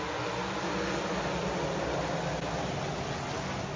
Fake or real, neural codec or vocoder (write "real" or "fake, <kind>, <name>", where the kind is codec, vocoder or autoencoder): real